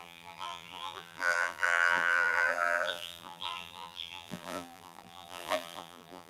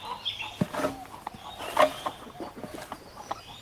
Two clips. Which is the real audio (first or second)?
second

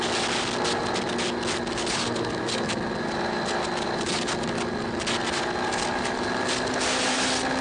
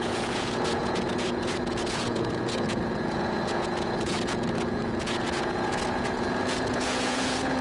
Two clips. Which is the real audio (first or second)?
first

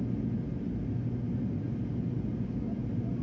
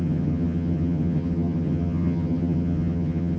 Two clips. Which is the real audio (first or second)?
first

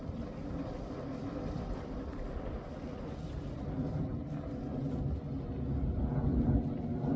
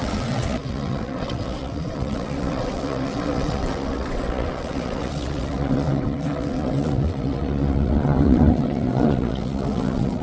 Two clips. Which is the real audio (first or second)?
first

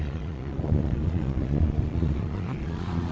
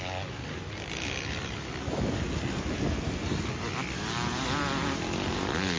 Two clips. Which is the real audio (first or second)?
second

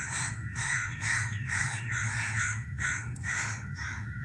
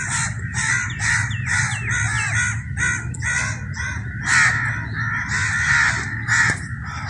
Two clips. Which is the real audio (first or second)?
second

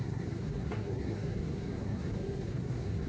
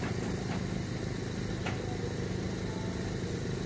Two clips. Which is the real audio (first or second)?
second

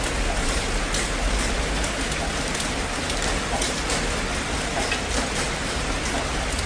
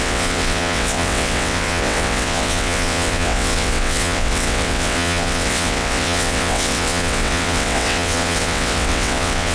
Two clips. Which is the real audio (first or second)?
first